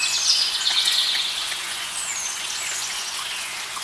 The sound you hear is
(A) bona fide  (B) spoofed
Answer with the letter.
B